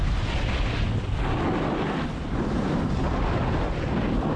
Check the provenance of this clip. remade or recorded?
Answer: recorded